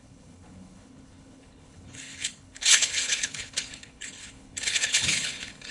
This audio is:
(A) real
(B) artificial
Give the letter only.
B